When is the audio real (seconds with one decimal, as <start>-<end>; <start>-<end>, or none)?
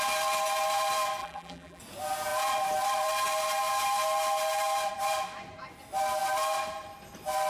0.0-1.2; 1.8-7.5